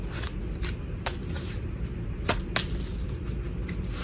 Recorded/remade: recorded